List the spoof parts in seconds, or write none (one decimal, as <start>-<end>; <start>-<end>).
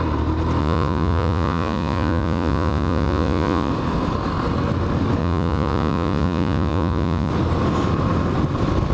0.6-3.7; 5.2-7.3